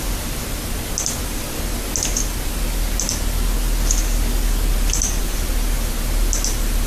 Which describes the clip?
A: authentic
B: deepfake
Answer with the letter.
A